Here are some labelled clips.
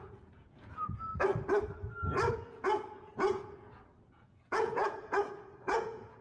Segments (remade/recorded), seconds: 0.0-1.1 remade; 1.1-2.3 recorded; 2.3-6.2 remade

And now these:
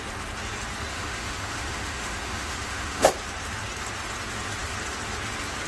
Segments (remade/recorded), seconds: 0.0-0.9 recorded; 0.9-3.1 remade; 3.1-5.7 recorded

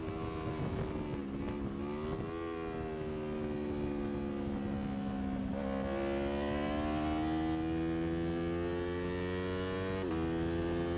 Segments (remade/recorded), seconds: 0.0-11.0 recorded

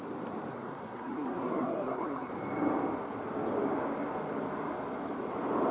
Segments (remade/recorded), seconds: 0.0-0.5 recorded; 0.5-2.3 remade; 2.3-5.7 recorded

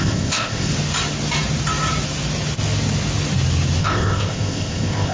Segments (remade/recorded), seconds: 0.0-0.7 remade; 0.7-3.8 recorded; 3.8-5.1 remade

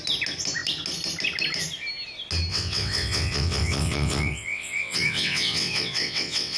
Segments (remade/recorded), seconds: 0.0-2.5 recorded; 2.5-6.6 remade